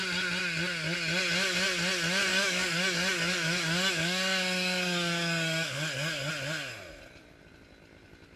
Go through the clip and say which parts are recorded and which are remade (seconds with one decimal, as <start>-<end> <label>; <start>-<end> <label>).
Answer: 0.0-2.3 recorded; 2.3-6.3 remade; 6.3-8.4 recorded